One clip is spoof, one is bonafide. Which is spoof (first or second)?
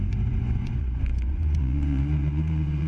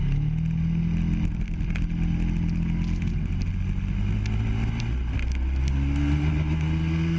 first